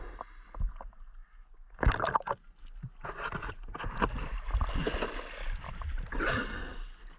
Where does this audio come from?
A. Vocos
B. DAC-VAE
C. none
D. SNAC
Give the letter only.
C